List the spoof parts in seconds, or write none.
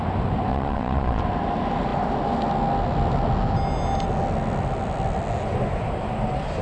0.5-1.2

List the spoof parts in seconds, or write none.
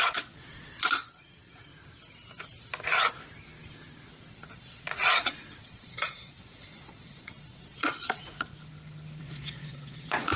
0.0-1.7; 4.5-8.5; 9.2-10.4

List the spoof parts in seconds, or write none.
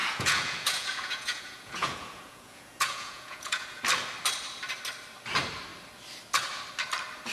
0.0-3.8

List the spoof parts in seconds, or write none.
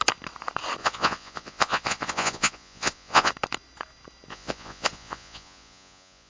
0.8-3.3; 4.3-6.3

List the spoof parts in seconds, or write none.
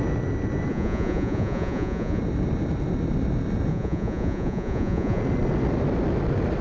0.7-2.2; 3.7-5.2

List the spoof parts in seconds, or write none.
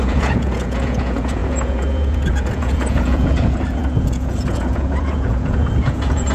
0.0-6.3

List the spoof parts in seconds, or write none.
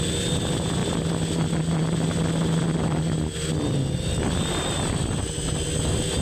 none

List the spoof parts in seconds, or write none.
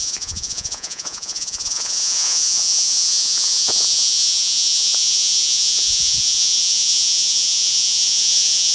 0.0-8.7